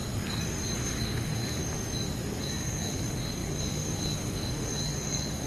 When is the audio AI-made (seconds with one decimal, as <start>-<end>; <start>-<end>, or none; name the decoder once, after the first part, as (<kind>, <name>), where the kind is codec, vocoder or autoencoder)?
0.8-1.6 (autoencoder, DAC-VAE); 2.4-5.5